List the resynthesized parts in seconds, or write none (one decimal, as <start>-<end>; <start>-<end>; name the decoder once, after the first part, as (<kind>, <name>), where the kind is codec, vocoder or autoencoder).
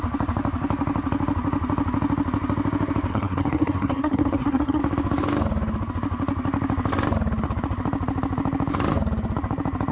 3.1-4.8 (codec, SNAC)